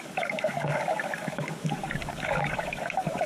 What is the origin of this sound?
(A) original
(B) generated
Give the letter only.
B